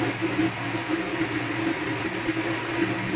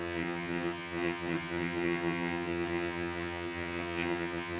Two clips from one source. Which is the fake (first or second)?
second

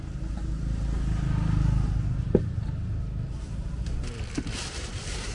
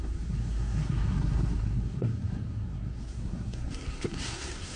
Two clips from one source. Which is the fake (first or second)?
second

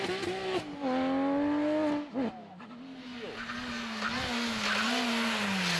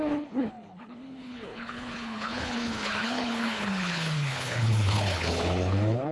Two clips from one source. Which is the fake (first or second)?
second